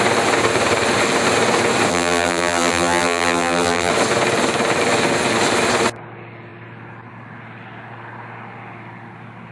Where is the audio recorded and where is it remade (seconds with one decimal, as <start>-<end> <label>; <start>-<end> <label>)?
0.0-1.9 recorded; 1.9-3.9 remade; 3.9-9.5 recorded